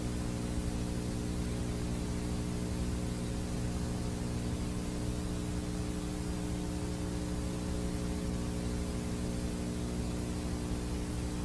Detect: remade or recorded recorded